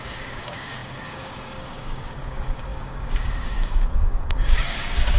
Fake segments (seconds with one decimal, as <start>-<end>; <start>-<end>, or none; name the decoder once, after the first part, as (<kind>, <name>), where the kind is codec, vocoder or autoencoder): 0.0-5.2 (codec, DAC)